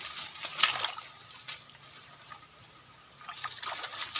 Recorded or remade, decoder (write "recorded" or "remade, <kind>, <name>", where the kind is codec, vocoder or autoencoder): recorded